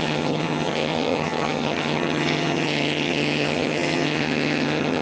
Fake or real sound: fake